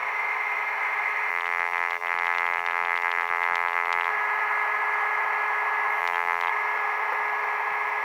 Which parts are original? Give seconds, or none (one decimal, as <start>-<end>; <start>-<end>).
0.0-1.3; 4.1-6.0; 6.5-8.0